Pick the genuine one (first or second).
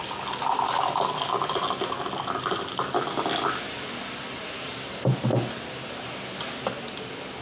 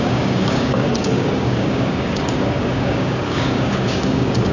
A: first